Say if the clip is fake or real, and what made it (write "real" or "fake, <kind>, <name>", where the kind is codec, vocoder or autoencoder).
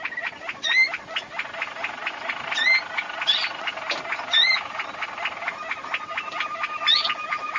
real